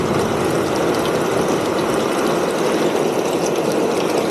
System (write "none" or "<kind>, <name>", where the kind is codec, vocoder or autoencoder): none